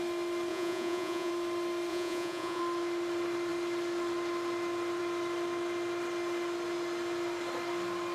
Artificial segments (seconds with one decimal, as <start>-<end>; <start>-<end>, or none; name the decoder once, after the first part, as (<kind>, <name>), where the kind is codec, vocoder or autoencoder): 0.5-1.3 (vocoder, Vocos); 1.9-2.6